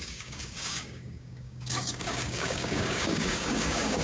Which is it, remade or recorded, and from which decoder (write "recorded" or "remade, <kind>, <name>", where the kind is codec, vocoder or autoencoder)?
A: remade, codec, DAC